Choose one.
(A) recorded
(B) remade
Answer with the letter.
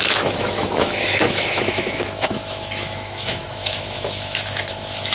B